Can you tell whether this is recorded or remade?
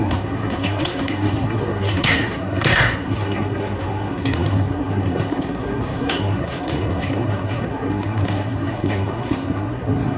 remade